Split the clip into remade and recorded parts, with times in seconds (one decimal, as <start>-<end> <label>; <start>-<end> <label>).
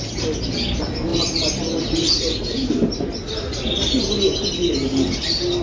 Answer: 0.0-5.6 recorded